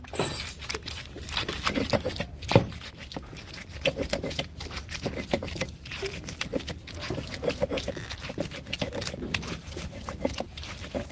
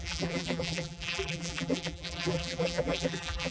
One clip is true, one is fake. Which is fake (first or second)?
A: second